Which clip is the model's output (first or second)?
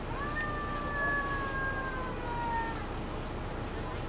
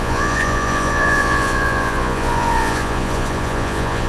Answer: second